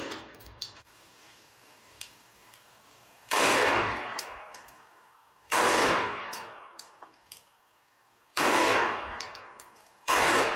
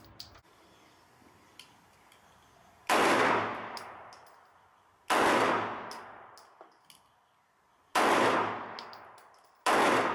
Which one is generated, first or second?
first